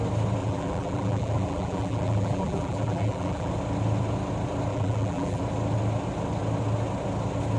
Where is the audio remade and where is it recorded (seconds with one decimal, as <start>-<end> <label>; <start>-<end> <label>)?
0.0-0.4 recorded; 0.4-3.5 remade; 3.5-4.7 recorded; 4.7-5.4 remade; 5.4-7.6 recorded